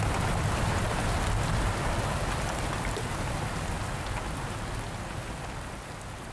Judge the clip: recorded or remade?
recorded